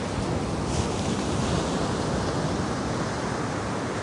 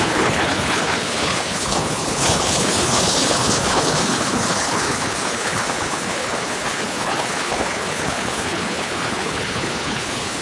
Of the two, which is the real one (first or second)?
first